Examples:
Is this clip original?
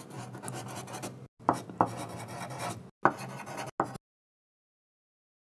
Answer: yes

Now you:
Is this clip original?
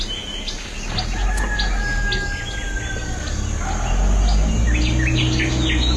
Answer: yes